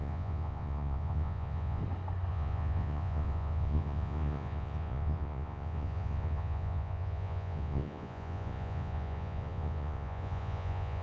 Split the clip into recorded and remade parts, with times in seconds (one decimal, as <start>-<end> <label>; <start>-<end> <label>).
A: 0.0-1.8 remade; 1.8-2.3 recorded; 2.3-11.0 remade